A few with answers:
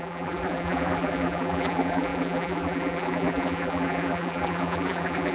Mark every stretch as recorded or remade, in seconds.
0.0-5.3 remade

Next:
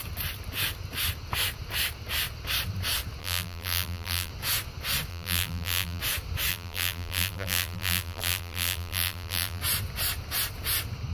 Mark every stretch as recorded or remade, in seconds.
0.0-3.2 recorded; 3.2-4.3 remade; 4.3-5.1 recorded; 5.1-6.0 remade; 6.0-6.5 recorded; 6.5-9.6 remade; 9.6-11.1 recorded